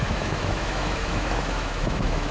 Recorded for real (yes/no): no